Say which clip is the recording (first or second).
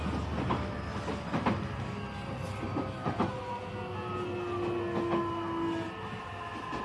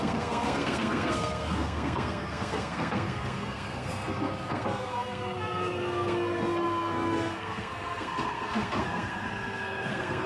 first